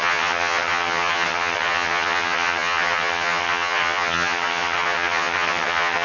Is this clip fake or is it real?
fake